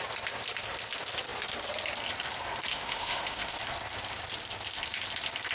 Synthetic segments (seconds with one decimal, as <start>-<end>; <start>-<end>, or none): 2.7-3.6